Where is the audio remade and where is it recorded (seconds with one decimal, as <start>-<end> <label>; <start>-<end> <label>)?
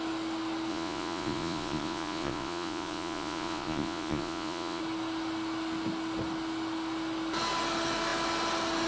0.0-0.7 recorded; 0.7-4.8 remade; 4.8-8.9 recorded